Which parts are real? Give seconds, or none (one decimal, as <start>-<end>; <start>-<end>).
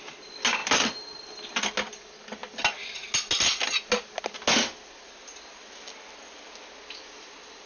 0.0-7.7